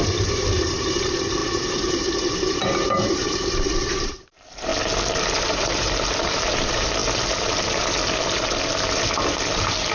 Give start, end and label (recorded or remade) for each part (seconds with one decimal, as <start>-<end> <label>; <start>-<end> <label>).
0.0-4.7 remade; 4.7-5.4 recorded; 5.4-7.0 remade; 7.0-9.9 recorded